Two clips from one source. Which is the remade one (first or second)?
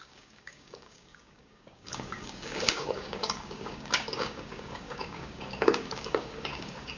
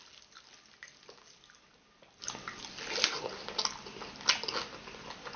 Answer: first